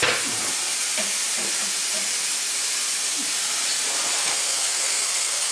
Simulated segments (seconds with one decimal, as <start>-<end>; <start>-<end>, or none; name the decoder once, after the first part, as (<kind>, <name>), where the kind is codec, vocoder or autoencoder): 4.2-5.5 (codec, SNAC)